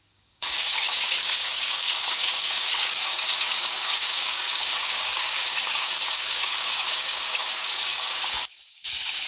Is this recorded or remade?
remade